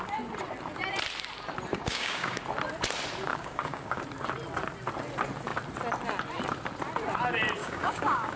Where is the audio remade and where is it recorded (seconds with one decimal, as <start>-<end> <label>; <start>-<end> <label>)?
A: 0.0-1.7 recorded; 1.7-2.4 remade; 2.4-3.3 recorded; 3.3-4.0 remade; 4.0-7.6 recorded; 7.6-8.4 remade